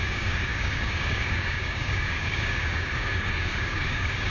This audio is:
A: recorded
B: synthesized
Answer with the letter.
B